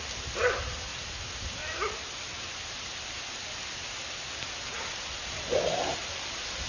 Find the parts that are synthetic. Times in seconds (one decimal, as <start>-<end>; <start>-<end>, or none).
5.5-6.7